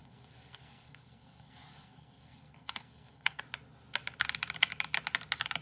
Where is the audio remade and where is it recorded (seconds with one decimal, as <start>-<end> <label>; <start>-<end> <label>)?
0.0-3.4 remade; 3.4-5.6 recorded